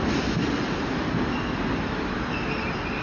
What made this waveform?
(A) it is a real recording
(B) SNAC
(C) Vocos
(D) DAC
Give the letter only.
A